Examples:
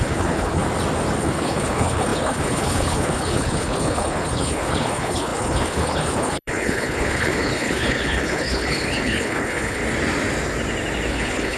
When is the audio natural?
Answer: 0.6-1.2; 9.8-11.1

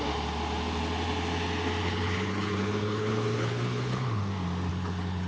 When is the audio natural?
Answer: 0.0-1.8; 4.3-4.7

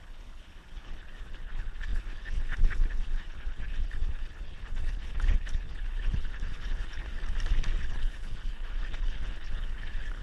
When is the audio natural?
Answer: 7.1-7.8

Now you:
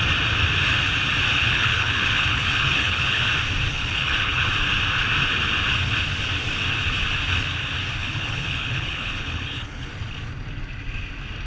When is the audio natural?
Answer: 0.0-1.3; 3.3-3.7; 4.5-8.0; 9.9-11.5

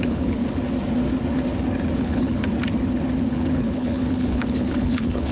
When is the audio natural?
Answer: 0.4-2.0; 2.5-3.3

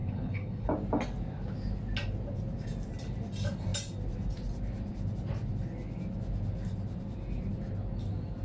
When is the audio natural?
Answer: 0.7-8.4